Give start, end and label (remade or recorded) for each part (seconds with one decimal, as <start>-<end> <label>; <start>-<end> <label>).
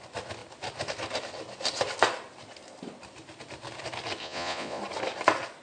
0.0-4.2 recorded; 4.2-4.8 remade; 4.8-5.6 recorded